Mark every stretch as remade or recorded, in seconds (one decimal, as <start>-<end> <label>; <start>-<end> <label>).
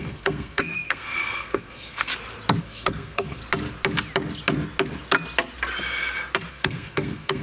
0.0-2.1 remade; 2.1-2.6 recorded; 2.6-3.4 remade; 3.4-6.5 recorded; 6.5-7.4 remade